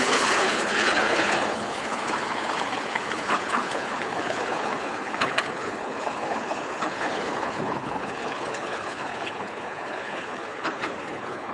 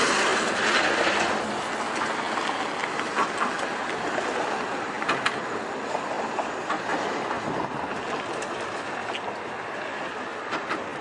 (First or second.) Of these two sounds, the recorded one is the second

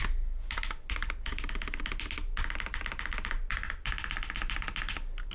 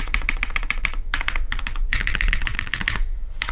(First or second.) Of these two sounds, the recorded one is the first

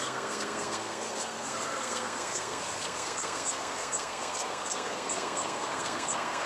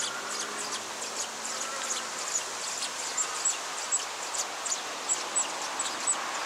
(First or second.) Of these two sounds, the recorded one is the second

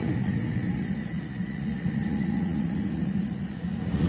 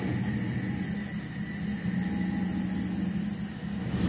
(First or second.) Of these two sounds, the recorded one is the second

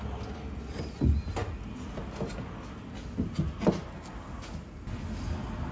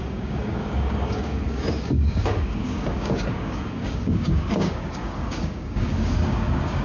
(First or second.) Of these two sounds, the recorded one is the first